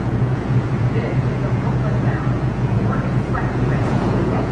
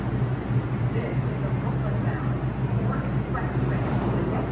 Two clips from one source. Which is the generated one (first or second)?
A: first